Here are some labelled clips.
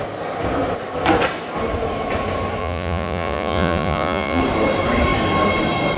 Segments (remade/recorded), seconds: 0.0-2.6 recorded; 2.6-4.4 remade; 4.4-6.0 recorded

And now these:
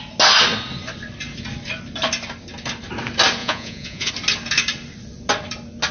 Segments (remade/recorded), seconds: 0.0-3.4 recorded; 3.4-4.1 remade; 4.1-5.9 recorded